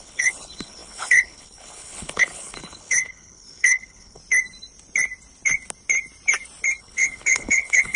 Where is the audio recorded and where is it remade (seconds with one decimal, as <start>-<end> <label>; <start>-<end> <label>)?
0.0-4.2 remade; 4.2-6.8 recorded; 6.8-8.0 remade